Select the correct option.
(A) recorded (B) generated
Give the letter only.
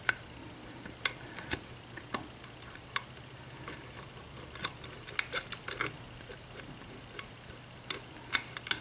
A